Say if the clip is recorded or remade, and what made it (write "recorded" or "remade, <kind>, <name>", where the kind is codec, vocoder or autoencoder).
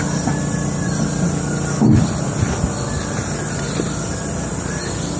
recorded